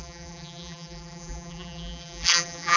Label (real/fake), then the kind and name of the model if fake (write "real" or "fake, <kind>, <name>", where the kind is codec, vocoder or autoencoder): fake, vocoder, BigVGAN v2